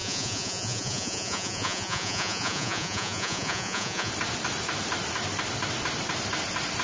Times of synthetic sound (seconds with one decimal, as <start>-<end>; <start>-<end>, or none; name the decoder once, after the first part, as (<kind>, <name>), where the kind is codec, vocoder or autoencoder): 0.0-4.1 (vocoder, Vocos)